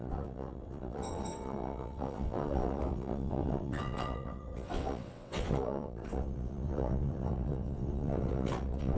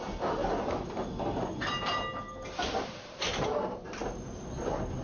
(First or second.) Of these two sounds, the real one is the second